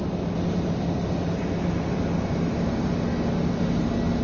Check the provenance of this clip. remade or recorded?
recorded